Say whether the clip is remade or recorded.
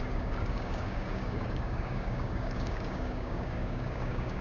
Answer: remade